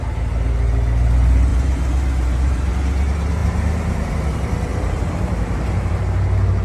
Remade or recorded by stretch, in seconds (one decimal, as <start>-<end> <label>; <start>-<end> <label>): 0.0-1.5 recorded; 1.5-2.7 remade; 2.7-3.4 recorded; 3.4-4.1 remade; 4.1-4.7 recorded; 4.7-6.0 remade; 6.0-6.6 recorded